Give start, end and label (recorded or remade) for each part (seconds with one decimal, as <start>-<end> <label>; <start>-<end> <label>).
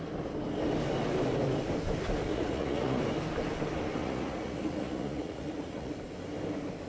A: 0.0-2.3 recorded; 2.3-3.0 remade; 3.0-4.0 recorded; 4.0-5.9 remade; 5.9-6.9 recorded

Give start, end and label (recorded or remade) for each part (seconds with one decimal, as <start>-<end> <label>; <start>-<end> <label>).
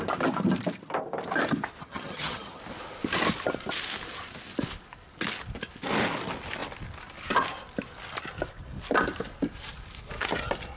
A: 0.0-1.8 recorded; 1.8-2.6 remade; 2.6-10.8 recorded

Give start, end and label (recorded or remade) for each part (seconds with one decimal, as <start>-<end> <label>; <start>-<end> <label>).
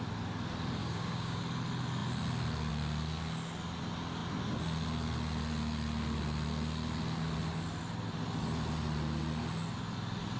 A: 0.0-0.8 recorded; 0.8-1.4 remade; 1.4-10.4 recorded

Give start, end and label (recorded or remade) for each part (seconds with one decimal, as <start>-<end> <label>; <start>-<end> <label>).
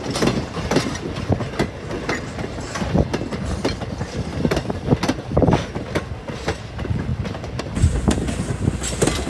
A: 0.0-3.1 recorded; 3.1-5.7 remade; 5.7-9.3 recorded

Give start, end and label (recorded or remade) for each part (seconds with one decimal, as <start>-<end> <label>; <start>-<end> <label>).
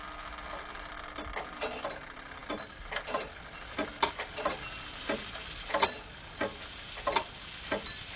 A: 0.0-8.2 recorded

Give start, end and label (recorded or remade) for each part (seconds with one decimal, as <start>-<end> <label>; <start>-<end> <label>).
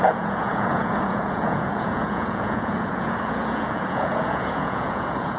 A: 0.0-5.4 remade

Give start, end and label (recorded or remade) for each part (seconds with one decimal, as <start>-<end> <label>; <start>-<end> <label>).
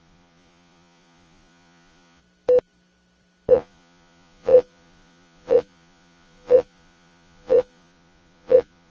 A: 0.0-2.2 remade; 2.2-3.5 recorded; 3.5-8.9 remade